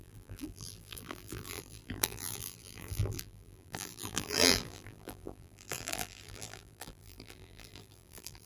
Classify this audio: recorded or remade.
remade